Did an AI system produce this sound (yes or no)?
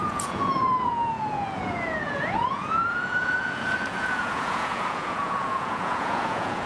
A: yes